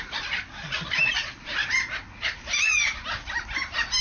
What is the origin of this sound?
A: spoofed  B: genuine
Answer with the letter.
B